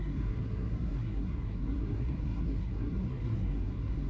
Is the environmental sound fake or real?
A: fake